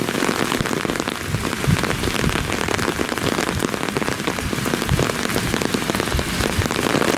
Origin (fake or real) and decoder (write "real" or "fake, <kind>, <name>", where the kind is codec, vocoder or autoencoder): real